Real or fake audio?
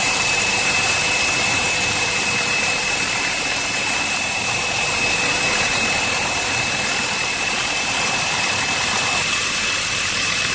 fake